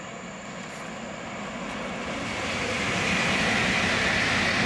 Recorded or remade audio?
recorded